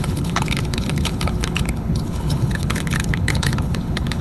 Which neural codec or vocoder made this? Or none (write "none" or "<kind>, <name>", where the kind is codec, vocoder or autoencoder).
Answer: codec, HILCodec